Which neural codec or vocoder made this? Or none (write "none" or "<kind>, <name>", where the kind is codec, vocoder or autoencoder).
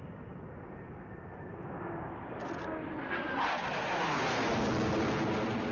none